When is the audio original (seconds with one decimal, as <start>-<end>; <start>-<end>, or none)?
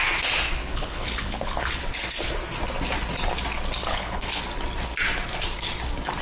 0.0-0.6; 1.8-3.9; 4.4-6.2